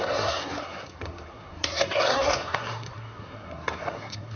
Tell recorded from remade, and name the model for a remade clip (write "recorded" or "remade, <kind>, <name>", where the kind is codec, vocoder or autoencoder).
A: remade, codec, SNAC